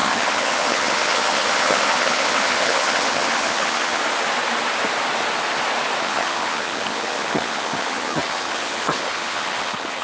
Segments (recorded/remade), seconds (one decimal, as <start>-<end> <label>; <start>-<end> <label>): 0.0-4.0 remade; 4.0-6.0 recorded; 6.0-10.0 remade